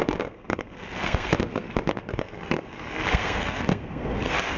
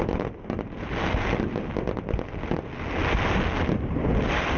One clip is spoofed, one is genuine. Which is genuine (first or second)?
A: second